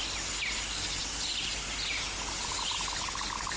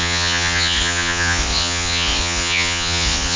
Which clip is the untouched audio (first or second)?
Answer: first